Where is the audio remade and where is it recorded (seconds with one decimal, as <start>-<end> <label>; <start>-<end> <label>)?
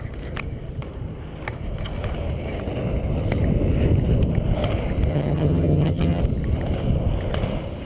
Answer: 0.0-5.1 recorded; 5.1-6.2 remade; 6.2-7.8 recorded